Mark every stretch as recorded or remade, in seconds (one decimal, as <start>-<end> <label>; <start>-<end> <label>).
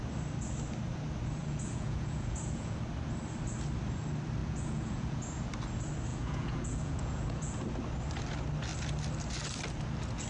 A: 0.0-1.4 recorded; 1.4-2.8 remade; 2.8-4.4 recorded; 4.4-5.5 remade; 5.5-6.1 recorded; 6.1-7.6 remade; 7.6-10.3 recorded